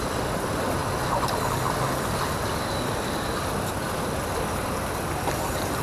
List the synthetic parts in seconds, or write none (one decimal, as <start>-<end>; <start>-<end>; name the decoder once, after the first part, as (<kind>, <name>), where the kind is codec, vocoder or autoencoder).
none